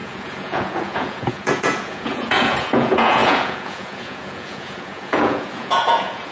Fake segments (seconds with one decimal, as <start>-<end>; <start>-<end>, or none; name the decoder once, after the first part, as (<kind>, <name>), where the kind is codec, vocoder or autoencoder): 0.0-6.3 (vocoder, Vocos)